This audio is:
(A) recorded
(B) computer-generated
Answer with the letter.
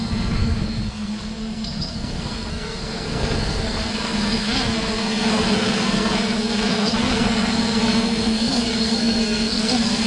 B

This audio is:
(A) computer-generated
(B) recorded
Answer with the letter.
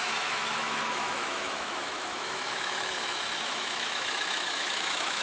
A